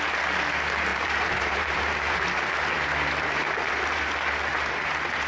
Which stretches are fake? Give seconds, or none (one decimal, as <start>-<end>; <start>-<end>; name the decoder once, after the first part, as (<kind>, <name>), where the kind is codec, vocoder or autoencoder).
0.9-4.1 (vocoder, BigVGAN v2); 4.5-5.3